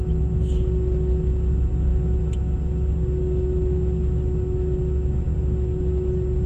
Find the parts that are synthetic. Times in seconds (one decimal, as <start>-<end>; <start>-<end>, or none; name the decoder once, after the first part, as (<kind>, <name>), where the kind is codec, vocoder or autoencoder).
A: none